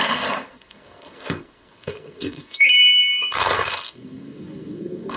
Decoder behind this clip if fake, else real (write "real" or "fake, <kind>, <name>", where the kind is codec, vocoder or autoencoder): fake, codec, SNAC